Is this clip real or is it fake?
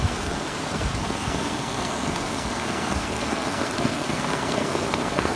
fake